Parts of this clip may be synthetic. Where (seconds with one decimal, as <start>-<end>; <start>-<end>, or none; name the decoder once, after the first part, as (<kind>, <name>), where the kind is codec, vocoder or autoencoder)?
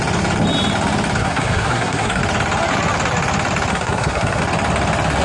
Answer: 1.2-2.2 (codec, SNAC); 3.7-4.4